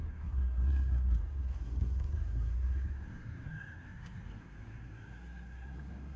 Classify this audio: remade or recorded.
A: remade